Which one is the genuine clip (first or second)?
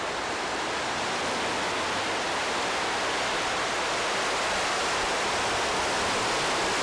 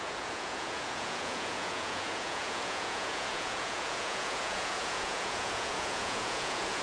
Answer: first